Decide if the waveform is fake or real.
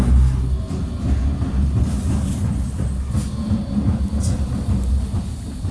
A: real